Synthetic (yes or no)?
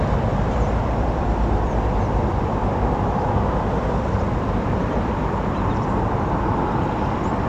yes